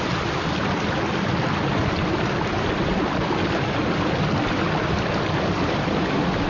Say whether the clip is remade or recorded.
recorded